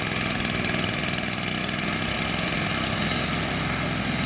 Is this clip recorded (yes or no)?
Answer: yes